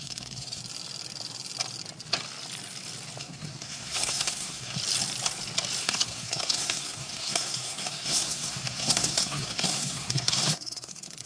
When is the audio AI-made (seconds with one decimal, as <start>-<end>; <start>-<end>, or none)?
0.0-0.6; 3.2-4.8; 5.8-11.3